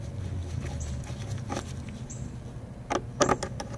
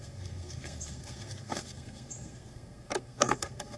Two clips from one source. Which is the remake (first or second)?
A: second